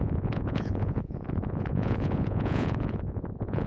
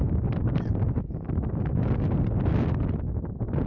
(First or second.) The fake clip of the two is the first